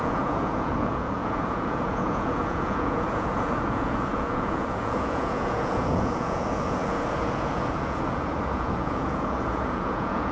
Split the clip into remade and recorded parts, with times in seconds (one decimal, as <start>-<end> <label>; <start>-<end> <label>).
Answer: 0.0-10.3 remade